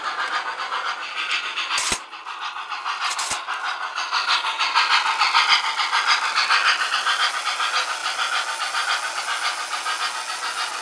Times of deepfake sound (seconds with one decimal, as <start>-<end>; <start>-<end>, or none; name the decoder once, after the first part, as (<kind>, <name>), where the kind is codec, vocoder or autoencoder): none